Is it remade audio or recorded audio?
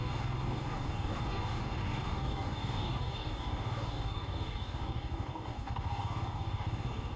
remade